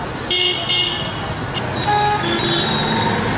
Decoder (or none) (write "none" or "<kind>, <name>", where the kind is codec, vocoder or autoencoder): none